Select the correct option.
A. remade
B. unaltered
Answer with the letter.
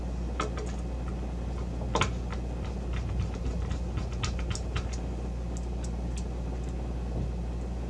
B